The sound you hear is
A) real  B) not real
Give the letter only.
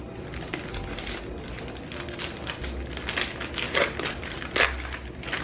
A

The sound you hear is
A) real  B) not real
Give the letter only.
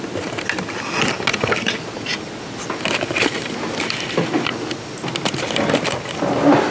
A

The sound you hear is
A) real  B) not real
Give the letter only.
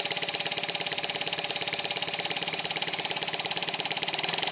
A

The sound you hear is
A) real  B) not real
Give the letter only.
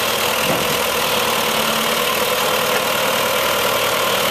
A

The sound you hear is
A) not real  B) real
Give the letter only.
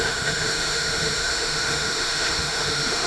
A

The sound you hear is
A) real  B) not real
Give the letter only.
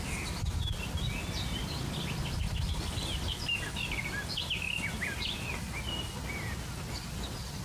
A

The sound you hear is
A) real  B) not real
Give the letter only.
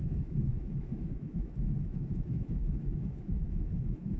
B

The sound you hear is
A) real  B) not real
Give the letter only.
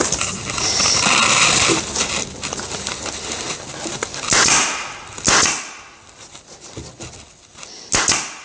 A